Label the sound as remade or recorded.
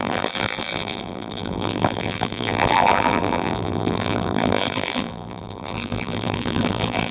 remade